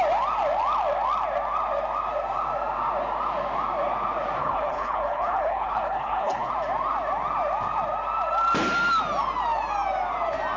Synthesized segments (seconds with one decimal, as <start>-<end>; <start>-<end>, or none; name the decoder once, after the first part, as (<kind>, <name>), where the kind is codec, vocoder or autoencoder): 4.4-6.5 (codec, HILCodec)